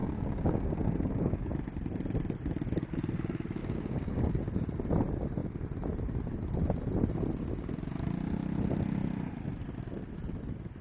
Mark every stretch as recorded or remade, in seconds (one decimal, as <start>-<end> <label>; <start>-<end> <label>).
0.0-1.5 remade; 1.5-3.6 recorded; 3.6-4.4 remade; 4.4-10.8 recorded